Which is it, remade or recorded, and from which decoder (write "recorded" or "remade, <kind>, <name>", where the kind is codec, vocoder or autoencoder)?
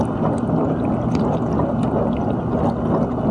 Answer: recorded